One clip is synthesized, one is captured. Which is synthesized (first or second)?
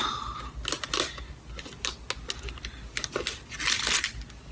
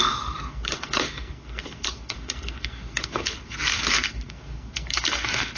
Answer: second